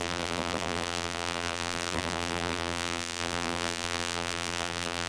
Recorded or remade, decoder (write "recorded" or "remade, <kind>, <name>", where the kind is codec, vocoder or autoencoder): remade, vocoder, BigVGAN v2